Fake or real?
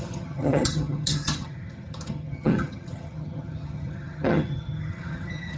fake